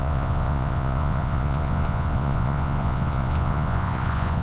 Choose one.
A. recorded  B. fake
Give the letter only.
B